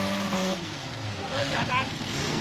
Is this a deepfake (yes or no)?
yes